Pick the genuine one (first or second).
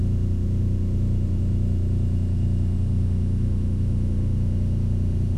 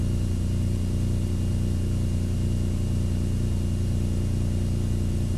second